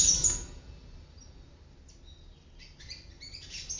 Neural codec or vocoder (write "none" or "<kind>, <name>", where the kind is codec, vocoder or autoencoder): none